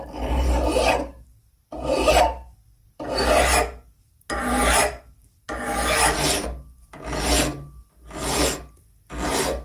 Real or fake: real